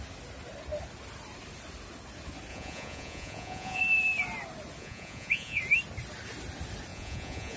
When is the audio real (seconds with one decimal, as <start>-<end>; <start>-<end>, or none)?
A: 0.0-2.5; 3.8-4.8; 5.6-6.9